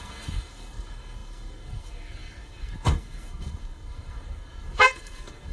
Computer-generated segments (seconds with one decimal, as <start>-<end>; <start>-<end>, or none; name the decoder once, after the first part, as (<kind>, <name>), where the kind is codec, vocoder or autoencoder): 0.0-5.5 (codec, SNAC)